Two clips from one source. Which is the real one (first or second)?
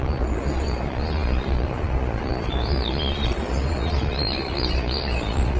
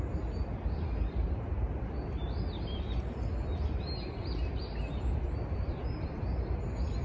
second